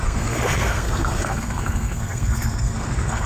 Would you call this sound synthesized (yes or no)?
yes